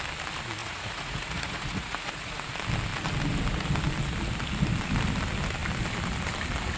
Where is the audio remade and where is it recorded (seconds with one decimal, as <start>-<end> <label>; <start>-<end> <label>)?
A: 0.0-0.6 recorded; 0.6-2.5 remade; 2.5-6.8 recorded